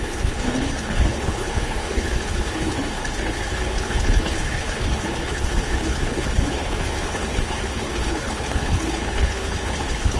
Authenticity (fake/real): fake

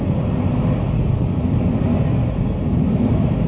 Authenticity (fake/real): real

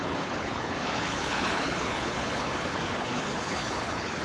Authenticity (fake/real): fake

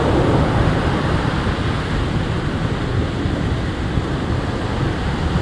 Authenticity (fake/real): real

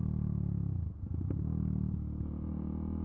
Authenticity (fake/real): real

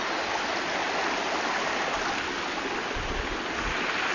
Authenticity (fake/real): real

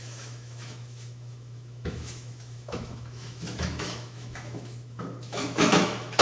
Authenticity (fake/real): fake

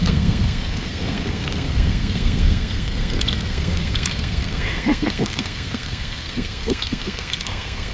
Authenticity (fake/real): fake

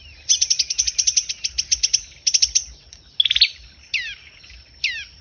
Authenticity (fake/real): real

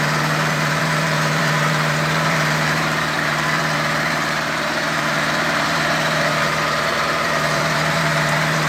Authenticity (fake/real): fake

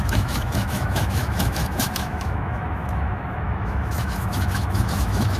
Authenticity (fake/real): fake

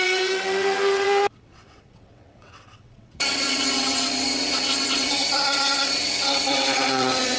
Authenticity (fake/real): fake